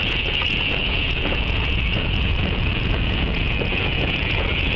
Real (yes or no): no